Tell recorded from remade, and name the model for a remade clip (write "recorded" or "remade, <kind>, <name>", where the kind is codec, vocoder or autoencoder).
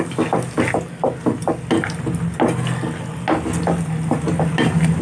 recorded